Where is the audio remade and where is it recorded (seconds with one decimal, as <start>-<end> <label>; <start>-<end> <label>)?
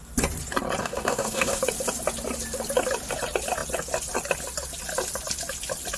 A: 0.0-0.8 recorded; 0.8-1.6 remade; 1.6-6.0 recorded